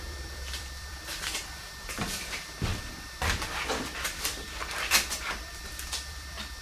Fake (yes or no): yes